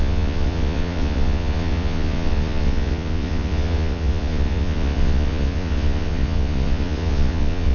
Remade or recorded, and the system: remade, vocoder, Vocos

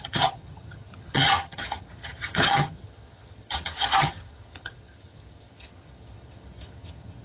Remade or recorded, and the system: remade, vocoder, HiFi-GAN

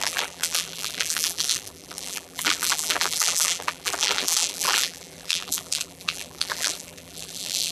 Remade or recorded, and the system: remade, vocoder, BigVGAN v2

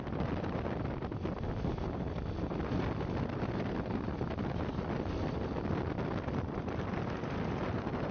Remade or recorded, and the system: recorded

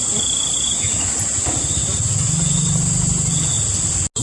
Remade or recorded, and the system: recorded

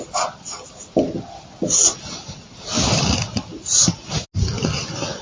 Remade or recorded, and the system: recorded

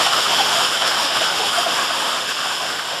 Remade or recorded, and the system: remade, autoencoder, DAC-VAE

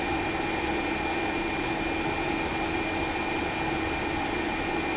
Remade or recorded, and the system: recorded